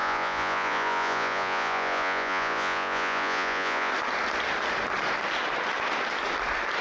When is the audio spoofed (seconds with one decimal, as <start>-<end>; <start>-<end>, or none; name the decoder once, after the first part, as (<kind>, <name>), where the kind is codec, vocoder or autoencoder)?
0.0-3.9 (vocoder, Vocos)